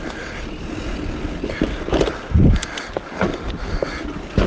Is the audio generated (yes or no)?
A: no